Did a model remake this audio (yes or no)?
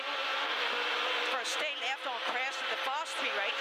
no